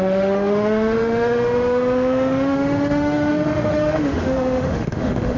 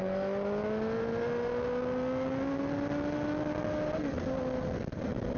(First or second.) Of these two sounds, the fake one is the first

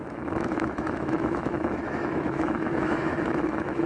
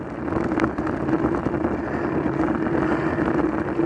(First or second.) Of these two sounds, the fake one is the first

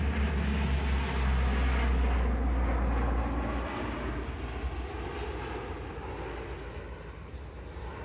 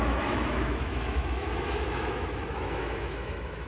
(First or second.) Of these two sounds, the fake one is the second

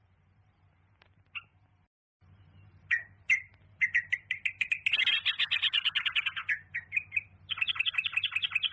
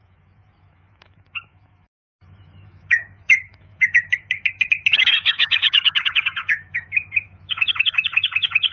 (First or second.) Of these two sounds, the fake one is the second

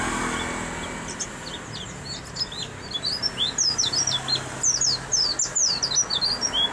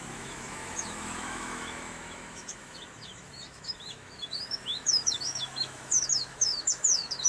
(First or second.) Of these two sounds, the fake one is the second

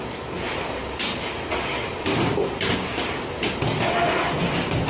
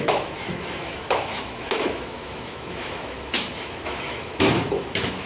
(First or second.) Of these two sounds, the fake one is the second